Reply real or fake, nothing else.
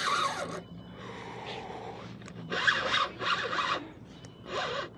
fake